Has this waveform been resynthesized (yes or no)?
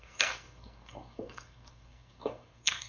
yes